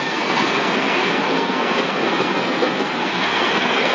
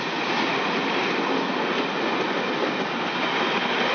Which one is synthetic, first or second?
first